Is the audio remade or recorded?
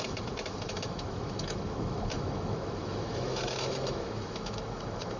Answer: remade